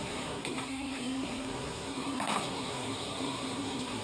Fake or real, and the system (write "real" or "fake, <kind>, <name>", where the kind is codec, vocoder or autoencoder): fake, codec, SNAC